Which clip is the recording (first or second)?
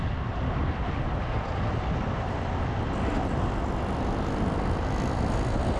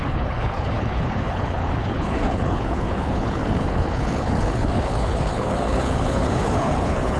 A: first